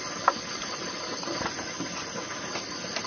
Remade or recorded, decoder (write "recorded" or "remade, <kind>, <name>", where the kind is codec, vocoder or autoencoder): recorded